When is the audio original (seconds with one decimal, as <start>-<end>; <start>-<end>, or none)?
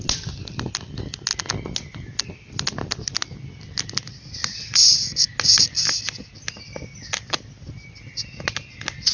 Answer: 0.0-9.1